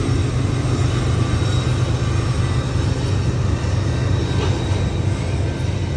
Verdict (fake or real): real